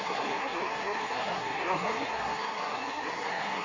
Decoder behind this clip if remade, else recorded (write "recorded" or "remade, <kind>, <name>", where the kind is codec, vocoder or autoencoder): remade, codec, SNAC